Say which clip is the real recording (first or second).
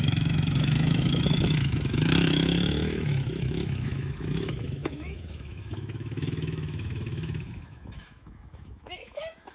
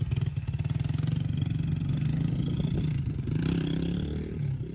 second